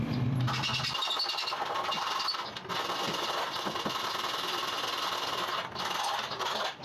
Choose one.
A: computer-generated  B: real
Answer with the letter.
B